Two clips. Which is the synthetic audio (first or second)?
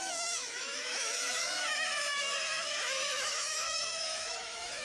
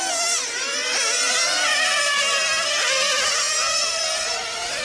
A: first